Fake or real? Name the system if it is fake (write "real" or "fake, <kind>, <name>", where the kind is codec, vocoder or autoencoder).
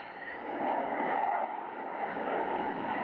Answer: fake, codec, DAC